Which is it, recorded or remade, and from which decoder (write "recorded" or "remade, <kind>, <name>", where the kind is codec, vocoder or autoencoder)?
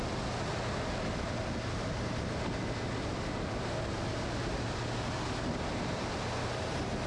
recorded